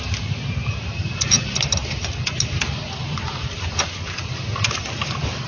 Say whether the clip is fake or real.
real